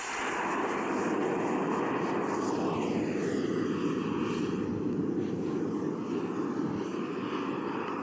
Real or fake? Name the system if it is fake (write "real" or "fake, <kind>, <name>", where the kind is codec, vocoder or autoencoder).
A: real